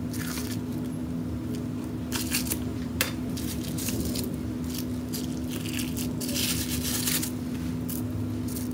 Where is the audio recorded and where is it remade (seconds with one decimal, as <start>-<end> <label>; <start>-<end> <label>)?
0.0-2.7 recorded; 2.7-4.0 remade; 4.0-8.7 recorded